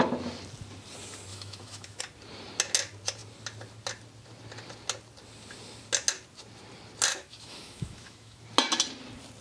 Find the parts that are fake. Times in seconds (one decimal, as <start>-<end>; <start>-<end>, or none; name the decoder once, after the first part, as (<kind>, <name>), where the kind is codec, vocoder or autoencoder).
1.3-2.0 (autoencoder, DAC-VAE); 7.1-8.4

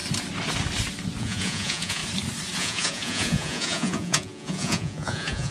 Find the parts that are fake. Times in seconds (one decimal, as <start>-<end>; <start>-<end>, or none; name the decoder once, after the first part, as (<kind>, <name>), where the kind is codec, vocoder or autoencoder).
1.2-2.0 (vocoder, Vocos); 2.6-5.5

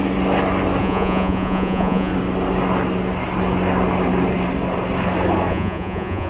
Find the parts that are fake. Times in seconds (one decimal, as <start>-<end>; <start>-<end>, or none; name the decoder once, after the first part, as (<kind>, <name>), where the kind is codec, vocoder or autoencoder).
0.8-2.1 (vocoder, Vocos); 5.5-6.3

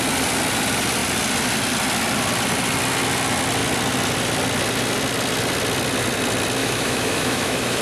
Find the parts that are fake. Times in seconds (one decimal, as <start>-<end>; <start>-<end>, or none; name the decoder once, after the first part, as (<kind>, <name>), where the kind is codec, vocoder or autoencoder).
6.6-7.8 (autoencoder, DAC-VAE)

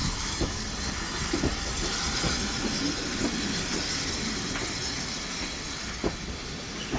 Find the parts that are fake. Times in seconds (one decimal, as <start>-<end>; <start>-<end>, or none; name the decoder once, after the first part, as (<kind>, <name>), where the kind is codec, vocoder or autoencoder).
0.0-0.6 (autoencoder, DAC-VAE)

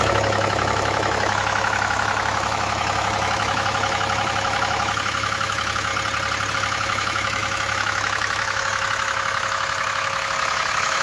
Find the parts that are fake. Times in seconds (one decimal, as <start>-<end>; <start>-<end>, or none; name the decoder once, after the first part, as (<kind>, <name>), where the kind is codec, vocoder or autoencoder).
0.0-5.9 (autoencoder, DAC-VAE); 6.5-11.0